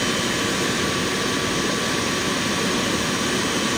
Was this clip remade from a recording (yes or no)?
no